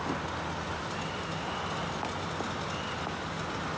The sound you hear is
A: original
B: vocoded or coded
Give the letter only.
A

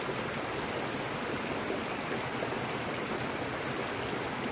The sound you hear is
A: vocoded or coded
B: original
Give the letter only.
B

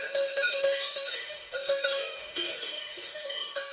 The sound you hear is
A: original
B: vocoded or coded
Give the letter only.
B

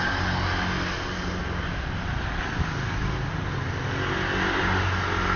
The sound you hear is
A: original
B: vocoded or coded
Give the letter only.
A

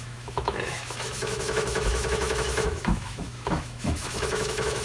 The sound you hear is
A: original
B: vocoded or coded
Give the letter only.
B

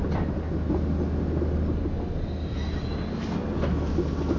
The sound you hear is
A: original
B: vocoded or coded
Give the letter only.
A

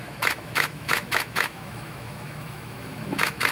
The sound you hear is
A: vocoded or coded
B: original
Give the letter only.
A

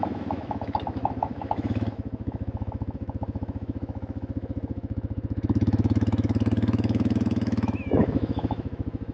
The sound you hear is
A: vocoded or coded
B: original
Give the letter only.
A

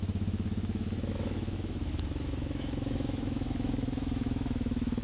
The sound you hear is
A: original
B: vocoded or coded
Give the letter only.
B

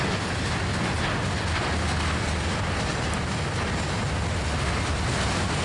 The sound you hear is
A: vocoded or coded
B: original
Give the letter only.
B